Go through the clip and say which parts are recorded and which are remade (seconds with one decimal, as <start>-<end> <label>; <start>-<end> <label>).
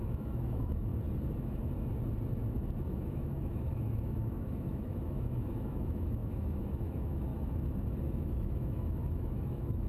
0.0-0.9 remade; 0.9-2.9 recorded; 2.9-7.3 remade; 7.3-8.1 recorded; 8.1-9.9 remade